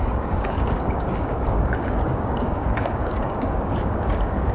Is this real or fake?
fake